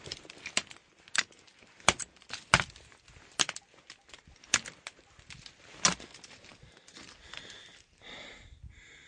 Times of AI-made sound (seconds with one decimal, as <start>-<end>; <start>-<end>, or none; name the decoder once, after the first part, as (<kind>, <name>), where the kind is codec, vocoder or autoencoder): none

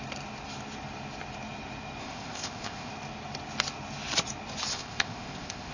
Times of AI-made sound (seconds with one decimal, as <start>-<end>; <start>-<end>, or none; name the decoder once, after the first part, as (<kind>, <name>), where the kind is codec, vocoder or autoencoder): 2.0-2.9 (codec, ZipCodec); 4.7-5.7

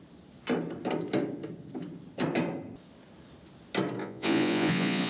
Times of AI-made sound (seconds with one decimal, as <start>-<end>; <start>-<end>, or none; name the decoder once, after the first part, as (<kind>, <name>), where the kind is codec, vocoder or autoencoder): 4.0-5.1 (vocoder, Vocos)

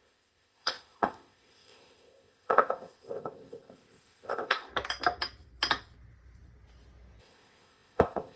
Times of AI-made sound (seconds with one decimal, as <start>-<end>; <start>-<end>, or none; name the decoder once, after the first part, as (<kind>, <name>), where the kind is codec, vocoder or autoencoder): 0.0-4.7 (codec, ZipCodec); 7.2-8.4

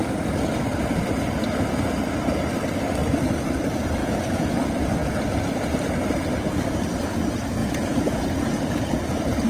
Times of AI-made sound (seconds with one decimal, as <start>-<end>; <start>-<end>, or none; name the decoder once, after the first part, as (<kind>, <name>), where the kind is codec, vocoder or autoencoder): 4.0-4.5 (vocoder, Vocos); 7.6-8.7

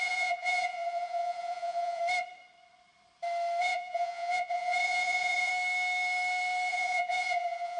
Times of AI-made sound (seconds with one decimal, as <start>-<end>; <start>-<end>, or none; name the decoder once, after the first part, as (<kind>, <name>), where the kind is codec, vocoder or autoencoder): 0.0-2.0 (vocoder, Vocos); 3.6-5.5; 6.7-7.8